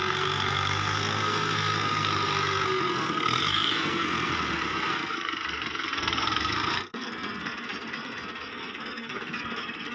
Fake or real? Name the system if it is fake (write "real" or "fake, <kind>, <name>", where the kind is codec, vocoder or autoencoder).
fake, codec, SNAC